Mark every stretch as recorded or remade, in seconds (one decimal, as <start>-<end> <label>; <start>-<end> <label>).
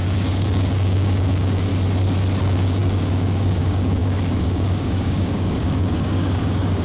0.0-1.7 remade; 1.7-2.4 recorded; 2.4-6.8 remade